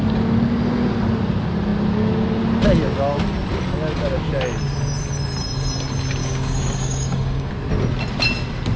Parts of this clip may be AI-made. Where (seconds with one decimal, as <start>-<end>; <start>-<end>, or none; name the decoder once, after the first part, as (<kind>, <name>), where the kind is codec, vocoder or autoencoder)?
6.2-7.5 (codec, DAC)